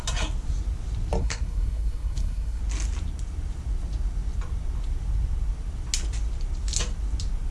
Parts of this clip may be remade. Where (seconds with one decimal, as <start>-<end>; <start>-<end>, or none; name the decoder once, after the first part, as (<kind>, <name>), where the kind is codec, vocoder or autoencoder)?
1.2-2.6 (codec, SNAC)